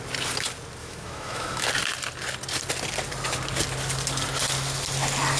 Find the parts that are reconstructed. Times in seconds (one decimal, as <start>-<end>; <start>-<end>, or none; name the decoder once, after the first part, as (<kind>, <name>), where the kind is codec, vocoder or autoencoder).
0.8-1.7 (autoencoder, DAC-VAE)